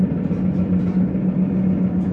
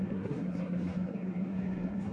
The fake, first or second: second